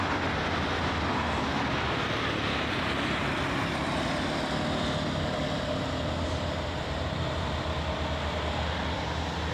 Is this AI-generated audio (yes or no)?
yes